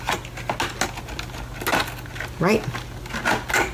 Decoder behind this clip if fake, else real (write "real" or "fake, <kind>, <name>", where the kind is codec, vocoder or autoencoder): real